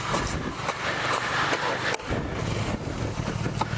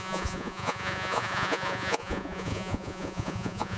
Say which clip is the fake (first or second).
second